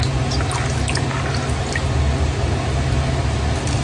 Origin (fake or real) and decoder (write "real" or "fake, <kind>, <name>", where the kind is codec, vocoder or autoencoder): real